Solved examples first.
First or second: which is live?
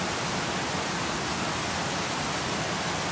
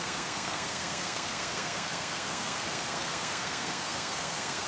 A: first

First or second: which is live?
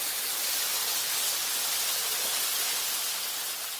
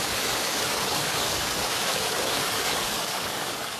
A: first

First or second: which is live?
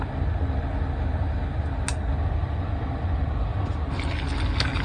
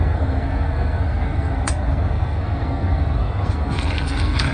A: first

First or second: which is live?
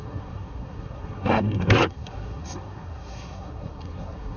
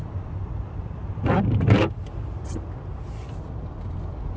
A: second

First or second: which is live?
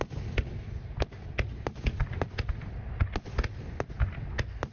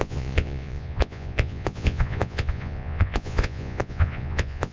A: first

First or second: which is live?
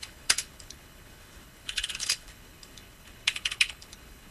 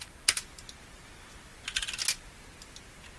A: second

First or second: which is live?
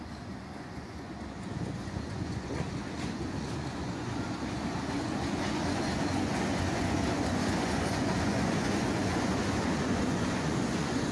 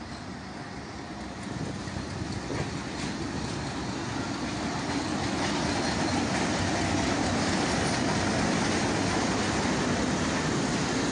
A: second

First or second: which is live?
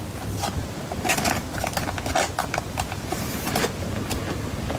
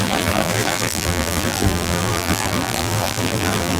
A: first